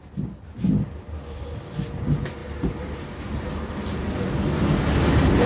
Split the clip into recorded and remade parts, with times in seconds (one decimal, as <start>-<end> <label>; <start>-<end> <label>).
0.0-5.5 recorded